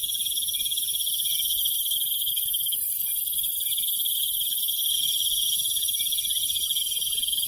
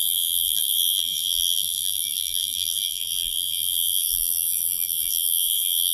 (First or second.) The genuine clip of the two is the first